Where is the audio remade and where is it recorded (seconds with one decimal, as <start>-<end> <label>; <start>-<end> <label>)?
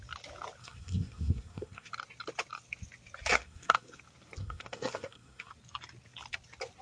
0.0-0.6 recorded; 0.6-1.9 remade; 1.9-3.3 recorded; 3.3-4.0 remade; 4.0-4.4 recorded; 4.4-5.5 remade; 5.5-6.8 recorded